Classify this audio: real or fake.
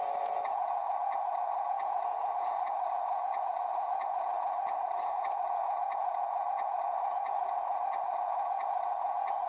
fake